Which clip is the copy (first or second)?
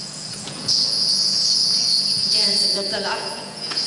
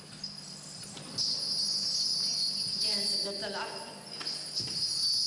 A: first